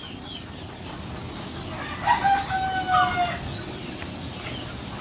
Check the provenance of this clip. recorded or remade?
recorded